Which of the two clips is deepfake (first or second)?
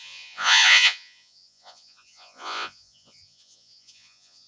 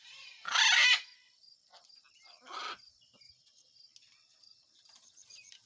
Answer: first